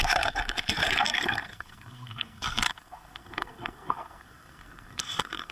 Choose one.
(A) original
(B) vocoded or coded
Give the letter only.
B